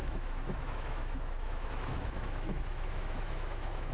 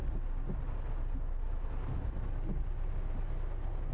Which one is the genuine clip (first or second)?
second